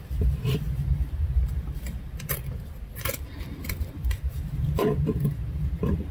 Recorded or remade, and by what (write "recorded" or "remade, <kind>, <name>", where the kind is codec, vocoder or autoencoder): remade, vocoder, BigVGAN v2